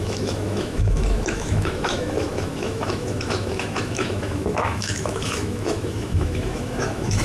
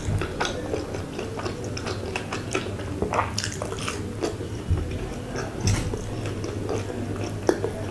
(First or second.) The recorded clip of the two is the second